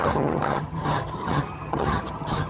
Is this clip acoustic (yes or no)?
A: no